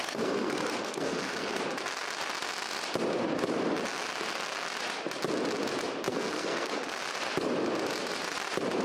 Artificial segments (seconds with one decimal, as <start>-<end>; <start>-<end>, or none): 0.0-1.6; 6.1-7.0